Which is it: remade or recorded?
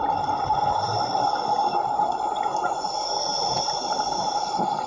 recorded